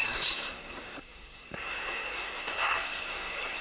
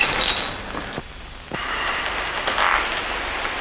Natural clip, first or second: second